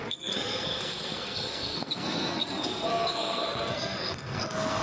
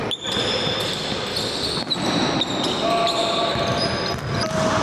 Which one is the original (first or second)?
second